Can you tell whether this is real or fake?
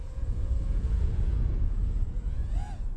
fake